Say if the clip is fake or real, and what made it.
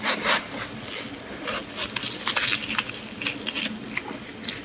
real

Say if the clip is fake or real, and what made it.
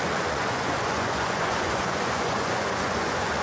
fake, vocoder, Vocos